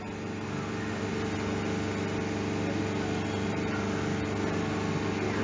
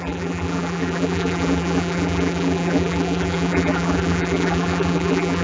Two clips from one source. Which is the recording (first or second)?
first